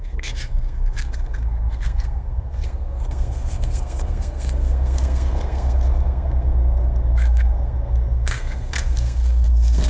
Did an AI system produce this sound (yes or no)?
yes